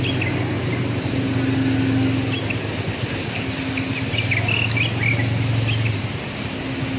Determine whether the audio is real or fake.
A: real